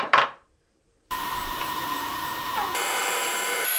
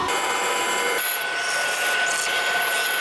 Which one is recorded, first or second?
second